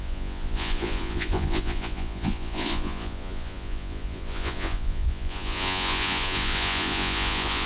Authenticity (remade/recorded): remade